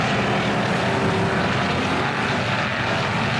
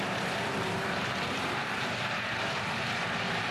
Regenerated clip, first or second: second